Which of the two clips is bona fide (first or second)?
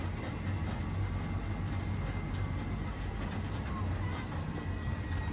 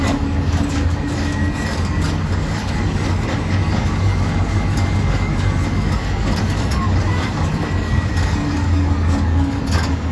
first